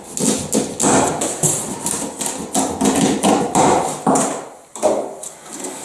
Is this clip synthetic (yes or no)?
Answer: no